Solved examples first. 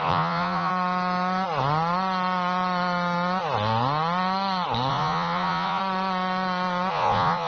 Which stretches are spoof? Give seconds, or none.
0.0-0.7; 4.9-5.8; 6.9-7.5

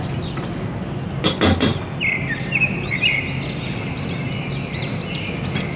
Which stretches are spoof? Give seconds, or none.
none

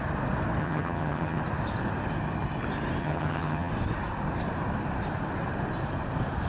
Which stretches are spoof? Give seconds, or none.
0.6-1.4; 3.0-3.7

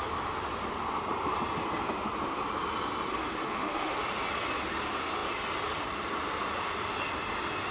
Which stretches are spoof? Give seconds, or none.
3.1-4.0

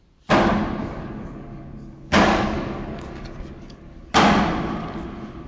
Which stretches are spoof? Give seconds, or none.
0.8-4.1

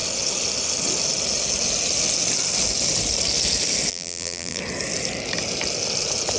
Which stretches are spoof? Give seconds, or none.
3.9-4.6

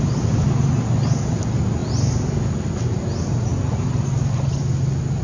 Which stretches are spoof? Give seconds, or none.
none